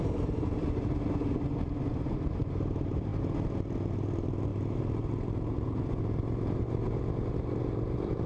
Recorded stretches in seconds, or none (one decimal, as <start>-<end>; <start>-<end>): 0.6-1.9; 3.1-3.9